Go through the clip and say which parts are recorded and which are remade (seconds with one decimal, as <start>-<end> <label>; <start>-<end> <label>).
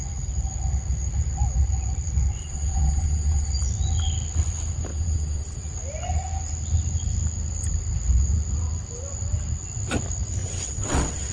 0.0-2.4 recorded; 2.4-3.5 remade; 3.5-4.9 recorded; 4.9-5.7 remade; 5.7-10.4 recorded; 10.4-11.3 remade